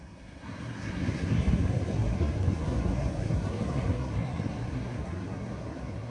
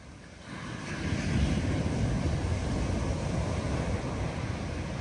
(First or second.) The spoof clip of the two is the first